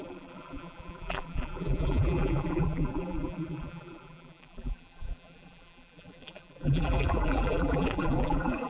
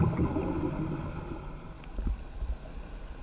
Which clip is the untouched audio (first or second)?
second